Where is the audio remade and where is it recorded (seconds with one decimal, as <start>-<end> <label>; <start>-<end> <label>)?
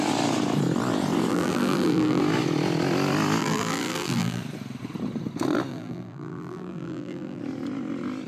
0.0-1.3 recorded; 1.3-2.2 remade; 2.2-3.4 recorded; 3.4-4.4 remade; 4.4-5.7 recorded; 5.7-7.4 remade; 7.4-8.3 recorded